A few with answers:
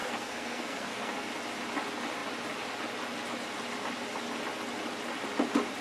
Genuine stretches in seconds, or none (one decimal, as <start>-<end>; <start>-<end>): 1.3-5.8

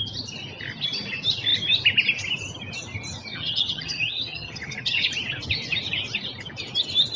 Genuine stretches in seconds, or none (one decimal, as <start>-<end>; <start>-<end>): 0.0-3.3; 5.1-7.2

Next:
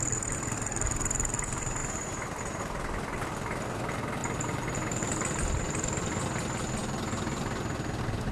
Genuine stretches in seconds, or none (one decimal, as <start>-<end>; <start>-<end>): 0.5-1.8; 2.6-4.2; 5.0-8.3